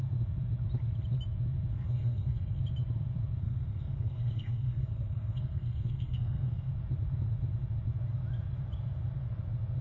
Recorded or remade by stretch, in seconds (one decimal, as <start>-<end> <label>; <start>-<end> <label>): 0.0-1.7 recorded; 1.7-2.6 remade; 2.6-3.4 recorded; 3.4-6.7 remade; 6.7-9.8 recorded